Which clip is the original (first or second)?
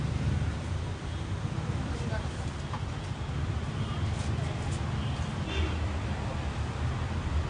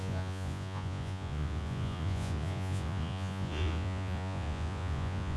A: first